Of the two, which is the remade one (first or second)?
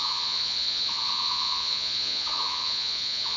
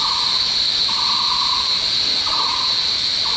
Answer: first